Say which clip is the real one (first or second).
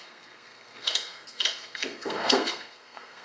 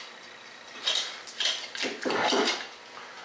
second